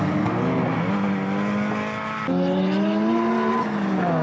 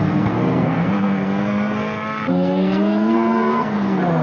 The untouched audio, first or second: first